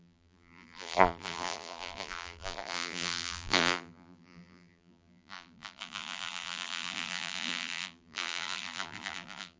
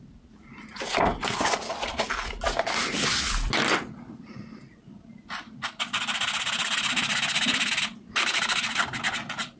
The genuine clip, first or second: second